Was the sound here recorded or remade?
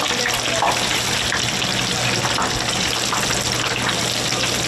recorded